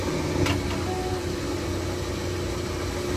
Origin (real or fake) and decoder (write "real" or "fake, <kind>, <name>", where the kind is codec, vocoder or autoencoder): real